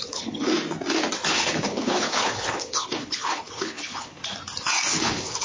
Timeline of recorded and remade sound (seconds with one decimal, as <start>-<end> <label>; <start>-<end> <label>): 0.0-0.5 remade; 0.5-1.3 recorded; 1.3-4.2 remade; 4.2-5.0 recorded; 5.0-5.4 remade